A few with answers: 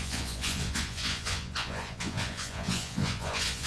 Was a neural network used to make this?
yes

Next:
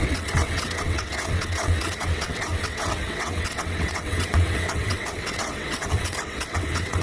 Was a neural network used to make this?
yes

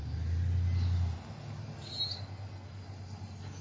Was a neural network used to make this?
no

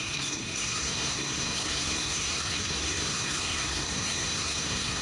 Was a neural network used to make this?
yes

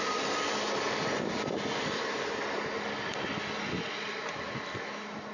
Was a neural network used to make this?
no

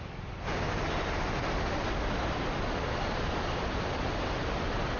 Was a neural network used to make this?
no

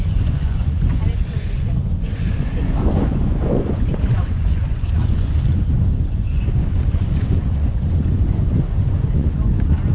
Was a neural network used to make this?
yes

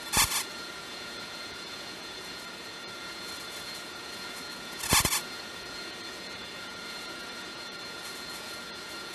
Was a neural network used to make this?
yes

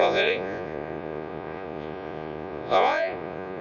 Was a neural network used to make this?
yes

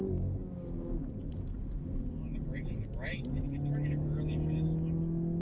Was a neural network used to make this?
no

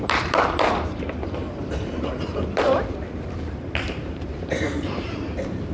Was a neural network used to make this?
yes